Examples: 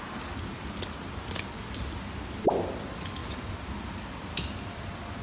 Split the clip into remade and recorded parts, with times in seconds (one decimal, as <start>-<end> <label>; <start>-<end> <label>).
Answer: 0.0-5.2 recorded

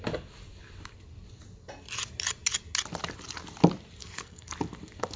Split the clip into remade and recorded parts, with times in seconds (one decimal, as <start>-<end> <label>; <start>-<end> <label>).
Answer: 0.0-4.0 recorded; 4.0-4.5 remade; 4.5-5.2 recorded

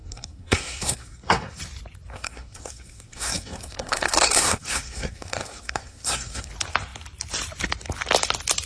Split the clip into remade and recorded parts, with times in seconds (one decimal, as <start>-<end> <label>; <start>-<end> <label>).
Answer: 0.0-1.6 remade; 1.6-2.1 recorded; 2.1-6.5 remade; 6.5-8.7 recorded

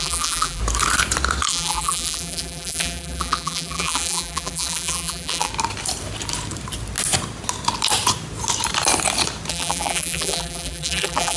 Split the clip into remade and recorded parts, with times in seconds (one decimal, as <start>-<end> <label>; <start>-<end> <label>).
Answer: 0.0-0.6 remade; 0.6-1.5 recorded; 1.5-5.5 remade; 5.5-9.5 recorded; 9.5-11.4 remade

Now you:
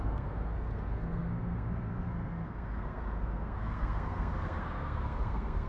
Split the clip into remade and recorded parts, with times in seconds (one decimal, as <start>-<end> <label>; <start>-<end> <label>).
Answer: 0.0-5.7 remade

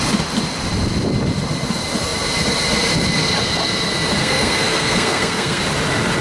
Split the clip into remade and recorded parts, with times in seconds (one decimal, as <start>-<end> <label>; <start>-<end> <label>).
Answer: 0.0-4.2 recorded; 4.2-5.6 remade; 5.6-6.2 recorded